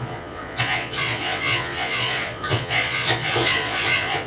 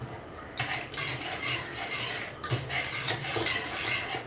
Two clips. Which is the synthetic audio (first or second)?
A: first